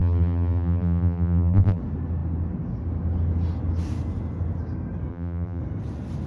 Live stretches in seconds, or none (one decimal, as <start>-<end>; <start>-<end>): 1.8-5.1; 5.6-6.3

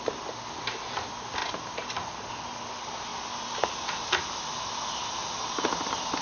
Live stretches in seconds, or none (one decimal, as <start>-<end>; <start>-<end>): 0.0-1.4; 2.3-6.2

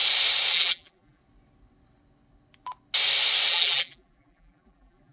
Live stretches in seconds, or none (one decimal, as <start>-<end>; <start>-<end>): 0.0-0.5; 1.2-3.5

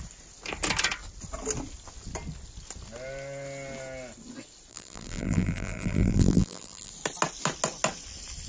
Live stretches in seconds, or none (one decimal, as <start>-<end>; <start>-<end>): 0.0-4.7; 6.9-8.5

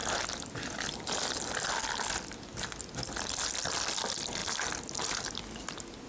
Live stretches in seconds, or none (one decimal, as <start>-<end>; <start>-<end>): 0.0-6.1

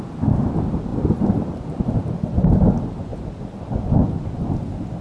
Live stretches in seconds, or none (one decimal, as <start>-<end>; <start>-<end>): 0.0-5.0

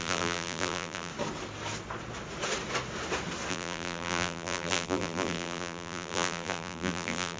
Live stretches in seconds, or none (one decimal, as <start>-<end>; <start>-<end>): 1.1-3.5

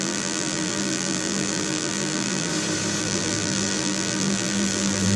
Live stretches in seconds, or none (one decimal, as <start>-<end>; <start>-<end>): 2.5-3.0